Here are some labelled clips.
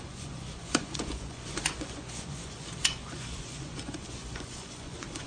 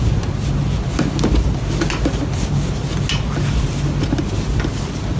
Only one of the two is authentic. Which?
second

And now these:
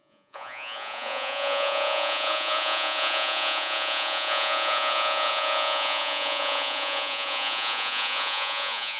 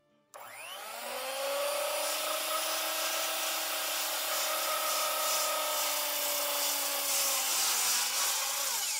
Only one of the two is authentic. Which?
second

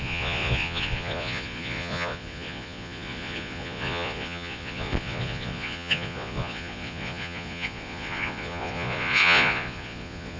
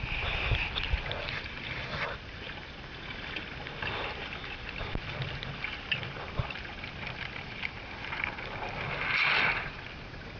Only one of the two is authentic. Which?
second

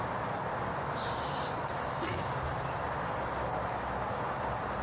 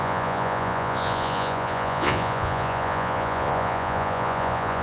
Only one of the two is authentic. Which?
first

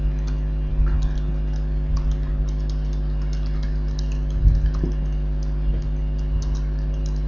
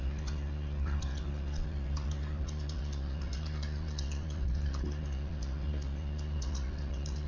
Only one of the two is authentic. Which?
first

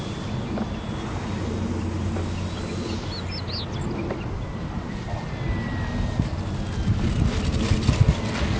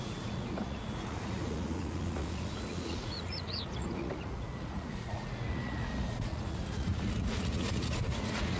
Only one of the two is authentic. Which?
first